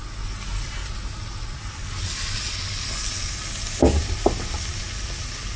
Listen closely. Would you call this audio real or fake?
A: real